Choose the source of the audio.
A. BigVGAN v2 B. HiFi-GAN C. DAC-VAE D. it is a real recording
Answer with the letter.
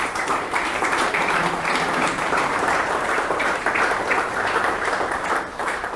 A